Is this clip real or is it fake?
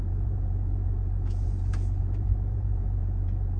fake